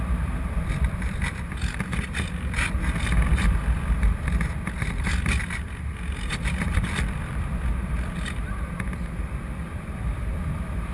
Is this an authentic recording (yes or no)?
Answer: no